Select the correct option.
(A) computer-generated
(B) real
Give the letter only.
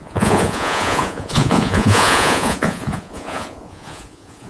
A